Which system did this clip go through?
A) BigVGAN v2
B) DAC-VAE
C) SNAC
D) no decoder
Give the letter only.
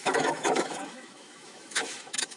B